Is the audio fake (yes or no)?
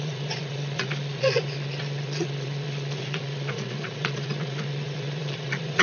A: yes